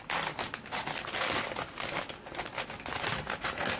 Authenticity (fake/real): real